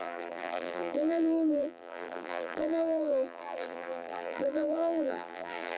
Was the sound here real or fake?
fake